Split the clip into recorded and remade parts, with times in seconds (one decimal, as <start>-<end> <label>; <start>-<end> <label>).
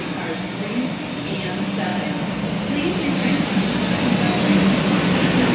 0.0-5.5 recorded